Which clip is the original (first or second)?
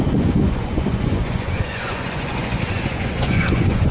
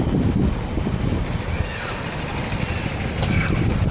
second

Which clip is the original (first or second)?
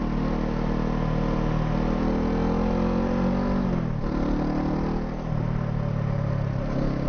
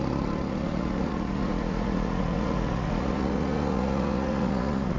first